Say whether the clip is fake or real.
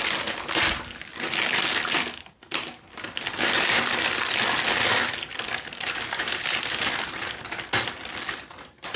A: real